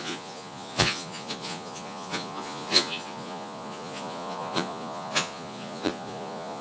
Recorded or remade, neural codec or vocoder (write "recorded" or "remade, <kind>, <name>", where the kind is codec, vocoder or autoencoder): remade, vocoder, Vocos